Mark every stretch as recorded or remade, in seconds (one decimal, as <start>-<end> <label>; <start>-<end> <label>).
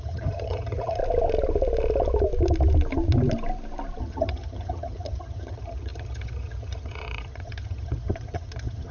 0.0-1.0 remade; 1.0-4.0 recorded; 4.0-8.9 remade